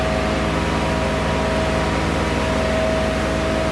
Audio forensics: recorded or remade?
recorded